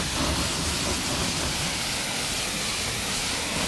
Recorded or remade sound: recorded